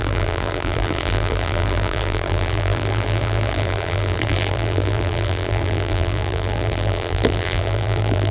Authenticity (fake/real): fake